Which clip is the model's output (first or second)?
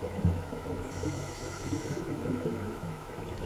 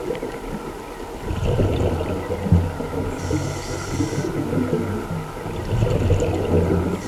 first